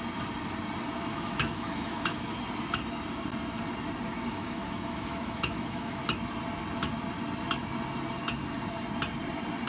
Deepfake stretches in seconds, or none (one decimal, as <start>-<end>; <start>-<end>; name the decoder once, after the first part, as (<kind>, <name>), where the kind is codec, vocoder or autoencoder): 1.1-2.4 (autoencoder, DAC-VAE); 4.1-6.0